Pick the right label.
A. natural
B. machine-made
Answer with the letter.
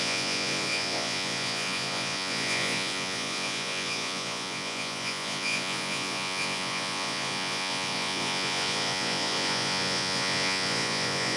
B